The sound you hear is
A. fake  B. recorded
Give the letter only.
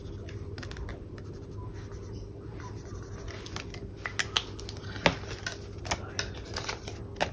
B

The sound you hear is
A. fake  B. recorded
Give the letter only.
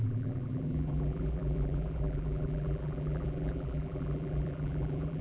A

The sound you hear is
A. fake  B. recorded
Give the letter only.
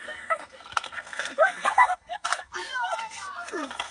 A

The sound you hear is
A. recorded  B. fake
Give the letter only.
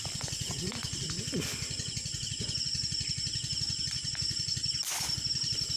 A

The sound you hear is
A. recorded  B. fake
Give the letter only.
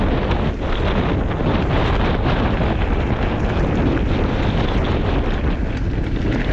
A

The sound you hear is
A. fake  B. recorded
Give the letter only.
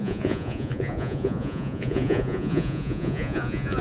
A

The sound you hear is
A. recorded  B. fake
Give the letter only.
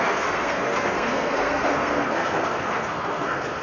B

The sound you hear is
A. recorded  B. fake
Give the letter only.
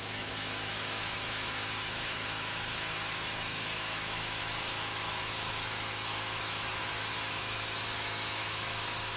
B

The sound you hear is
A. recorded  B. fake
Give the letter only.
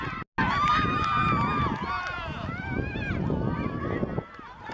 A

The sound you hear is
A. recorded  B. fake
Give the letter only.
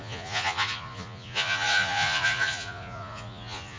B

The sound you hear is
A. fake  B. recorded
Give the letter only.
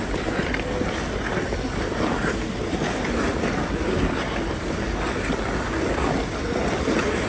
B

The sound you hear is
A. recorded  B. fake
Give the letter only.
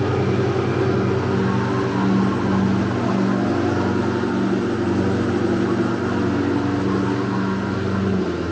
A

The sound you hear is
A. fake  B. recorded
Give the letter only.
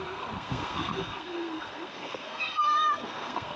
A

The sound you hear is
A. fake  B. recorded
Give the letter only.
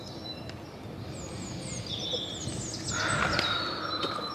B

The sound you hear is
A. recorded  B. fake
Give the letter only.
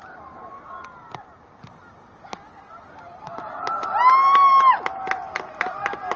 A